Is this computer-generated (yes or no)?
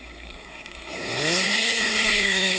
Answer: yes